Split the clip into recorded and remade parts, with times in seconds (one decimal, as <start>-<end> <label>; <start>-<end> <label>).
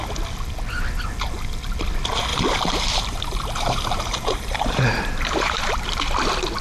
0.0-2.3 recorded; 2.3-6.0 remade; 6.0-6.6 recorded